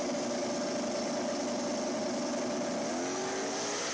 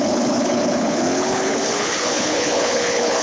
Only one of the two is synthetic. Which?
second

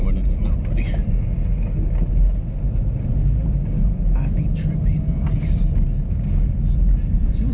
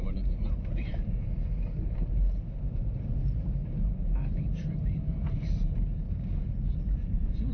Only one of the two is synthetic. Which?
second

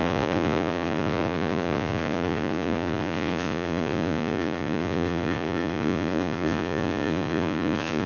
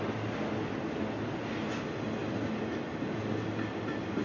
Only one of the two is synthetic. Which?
first